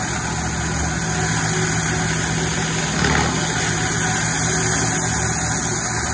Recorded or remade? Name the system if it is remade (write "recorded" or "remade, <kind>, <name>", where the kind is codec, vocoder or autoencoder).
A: recorded